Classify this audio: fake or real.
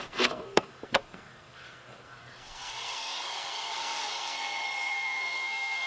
fake